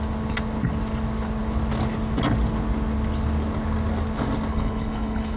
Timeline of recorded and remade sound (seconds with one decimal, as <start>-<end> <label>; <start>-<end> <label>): 0.0-4.5 recorded; 4.5-5.4 remade